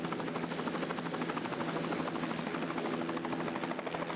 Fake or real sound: real